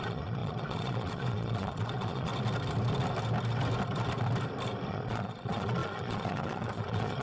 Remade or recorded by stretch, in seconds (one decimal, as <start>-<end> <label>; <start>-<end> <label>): 0.0-2.3 remade; 2.3-4.9 recorded; 4.9-7.2 remade